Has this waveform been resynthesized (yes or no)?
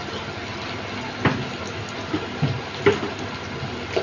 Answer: no